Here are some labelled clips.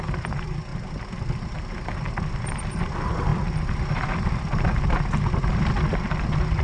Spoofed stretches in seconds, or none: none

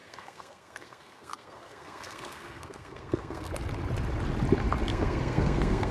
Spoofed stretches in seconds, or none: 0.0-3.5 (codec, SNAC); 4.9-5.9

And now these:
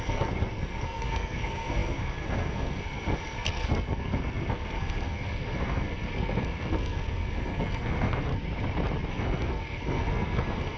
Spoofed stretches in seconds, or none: 0.0-8.3 (codec, SNAC); 9.1-10.8

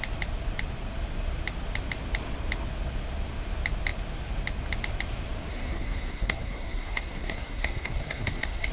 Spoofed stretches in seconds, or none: 5.5-8.7 (codec, SNAC)

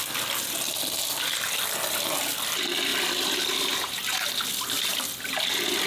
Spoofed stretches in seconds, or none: none